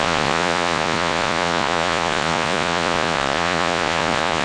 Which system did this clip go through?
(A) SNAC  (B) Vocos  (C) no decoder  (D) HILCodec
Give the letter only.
B